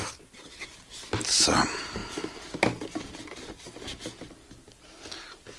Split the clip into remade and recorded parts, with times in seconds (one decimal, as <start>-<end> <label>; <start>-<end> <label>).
0.0-5.6 recorded